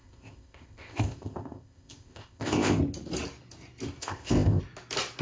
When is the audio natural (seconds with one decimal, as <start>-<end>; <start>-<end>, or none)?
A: 2.8-4.0; 4.6-5.2

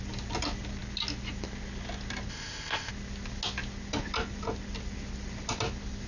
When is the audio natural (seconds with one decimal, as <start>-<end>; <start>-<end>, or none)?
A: 0.0-2.3; 2.9-6.1

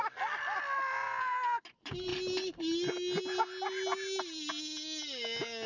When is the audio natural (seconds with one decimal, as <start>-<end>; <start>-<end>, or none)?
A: 0.0-5.7

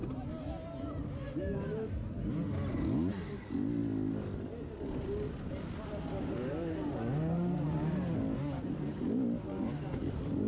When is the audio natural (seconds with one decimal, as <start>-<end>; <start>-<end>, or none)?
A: 0.0-10.5

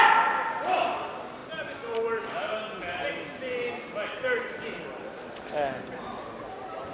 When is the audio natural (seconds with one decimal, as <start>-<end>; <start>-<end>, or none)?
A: 0.0-6.9

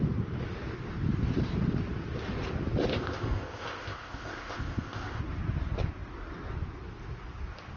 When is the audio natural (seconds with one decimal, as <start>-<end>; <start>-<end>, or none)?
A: 0.0-2.9; 5.2-7.8

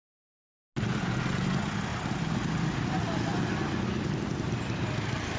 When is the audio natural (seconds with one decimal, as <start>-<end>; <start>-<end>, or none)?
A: 0.0-5.4